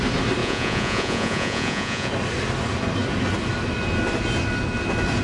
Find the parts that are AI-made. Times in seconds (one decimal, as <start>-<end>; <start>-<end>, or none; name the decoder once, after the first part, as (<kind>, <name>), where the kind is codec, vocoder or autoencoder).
0.4-2.1 (vocoder, Vocos)